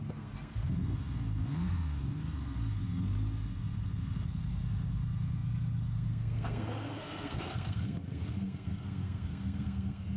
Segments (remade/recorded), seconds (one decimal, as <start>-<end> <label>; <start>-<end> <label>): 0.0-10.2 remade